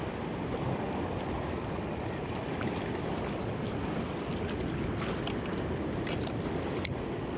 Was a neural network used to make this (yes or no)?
no